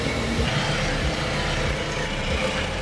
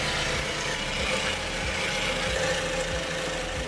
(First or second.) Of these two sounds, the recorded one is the second